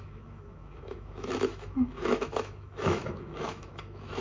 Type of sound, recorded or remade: remade